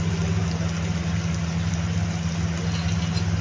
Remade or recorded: recorded